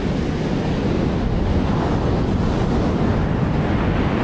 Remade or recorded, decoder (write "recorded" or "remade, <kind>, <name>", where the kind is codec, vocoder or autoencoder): recorded